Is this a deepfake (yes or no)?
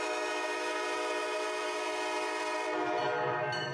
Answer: no